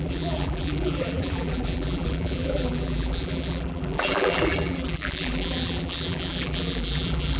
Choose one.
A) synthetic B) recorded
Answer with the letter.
A